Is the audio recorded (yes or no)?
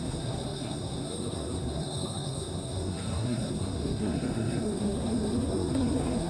no